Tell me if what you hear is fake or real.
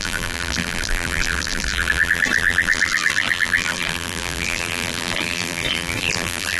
fake